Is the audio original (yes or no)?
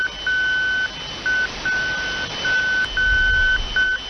yes